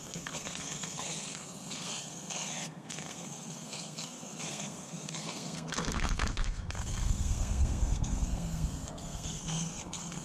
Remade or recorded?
remade